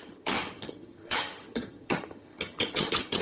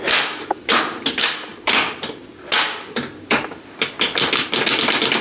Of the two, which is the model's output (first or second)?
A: first